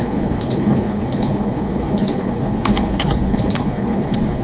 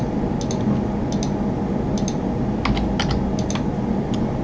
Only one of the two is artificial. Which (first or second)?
first